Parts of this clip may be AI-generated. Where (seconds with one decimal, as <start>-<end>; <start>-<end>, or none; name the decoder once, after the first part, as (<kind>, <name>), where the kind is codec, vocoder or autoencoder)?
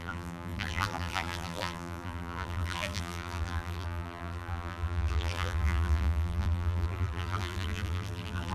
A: 0.0-8.5 (vocoder, BigVGAN v2)